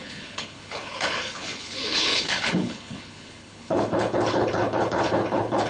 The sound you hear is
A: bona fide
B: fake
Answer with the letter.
B